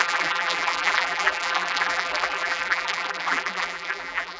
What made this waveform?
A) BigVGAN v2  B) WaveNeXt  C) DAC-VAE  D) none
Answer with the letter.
A